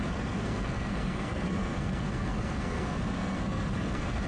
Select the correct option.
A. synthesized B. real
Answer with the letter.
A